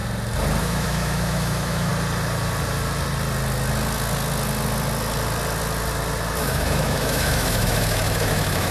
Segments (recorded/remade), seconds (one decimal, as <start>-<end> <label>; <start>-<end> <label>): 0.0-0.6 recorded; 0.6-1.9 remade; 1.9-6.4 recorded; 6.4-8.7 remade